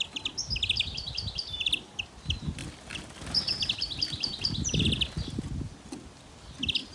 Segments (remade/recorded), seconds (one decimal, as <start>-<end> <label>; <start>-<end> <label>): 0.0-6.9 recorded